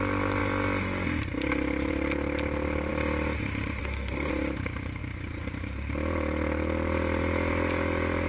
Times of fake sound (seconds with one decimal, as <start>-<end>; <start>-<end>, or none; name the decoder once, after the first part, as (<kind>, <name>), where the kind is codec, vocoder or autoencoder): 3.8-4.3 (codec, SNAC)